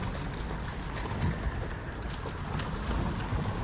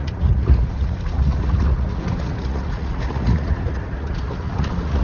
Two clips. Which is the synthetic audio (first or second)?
second